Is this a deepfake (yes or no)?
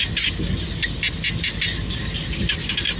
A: no